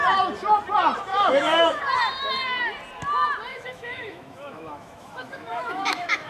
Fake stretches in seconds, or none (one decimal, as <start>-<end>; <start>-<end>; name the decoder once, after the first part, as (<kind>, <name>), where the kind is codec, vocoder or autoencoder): 1.1-1.8 (autoencoder, DAC-VAE); 3.5-6.3